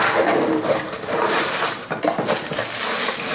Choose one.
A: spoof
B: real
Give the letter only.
A